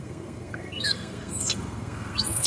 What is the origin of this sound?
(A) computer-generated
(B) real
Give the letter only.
A